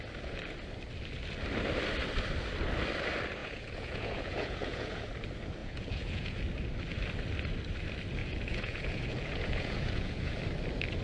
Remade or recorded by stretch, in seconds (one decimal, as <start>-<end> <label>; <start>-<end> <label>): 0.0-3.4 recorded; 3.4-5.1 remade; 5.1-5.6 recorded; 5.6-6.4 remade; 6.4-8.2 recorded; 8.2-10.4 remade; 10.4-11.0 recorded